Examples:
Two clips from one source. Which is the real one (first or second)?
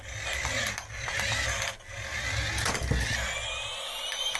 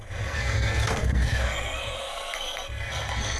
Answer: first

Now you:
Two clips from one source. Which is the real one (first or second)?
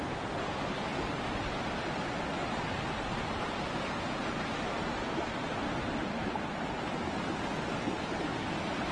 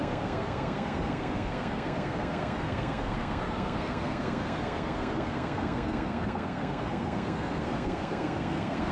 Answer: first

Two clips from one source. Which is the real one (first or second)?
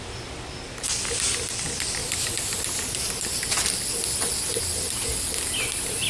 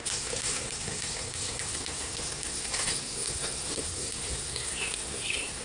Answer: first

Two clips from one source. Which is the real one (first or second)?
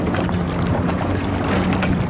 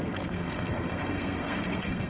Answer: first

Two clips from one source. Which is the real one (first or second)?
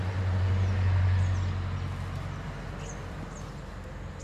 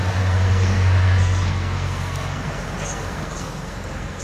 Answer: first